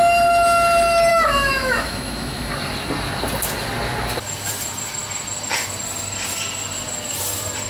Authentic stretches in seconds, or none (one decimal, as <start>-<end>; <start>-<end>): 0.0-1.1; 2.5-7.7